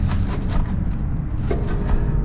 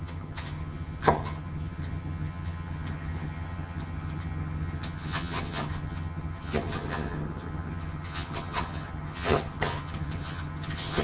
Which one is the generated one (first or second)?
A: second